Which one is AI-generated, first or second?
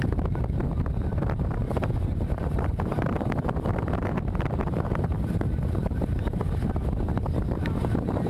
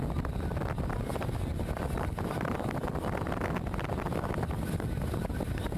first